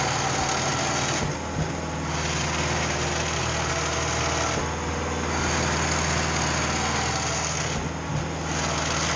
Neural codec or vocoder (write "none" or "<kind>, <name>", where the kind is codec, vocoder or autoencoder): none